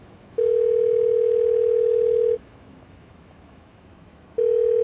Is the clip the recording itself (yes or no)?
no